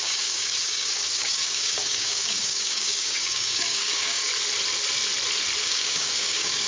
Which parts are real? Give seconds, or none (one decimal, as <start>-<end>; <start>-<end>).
4.3-5.6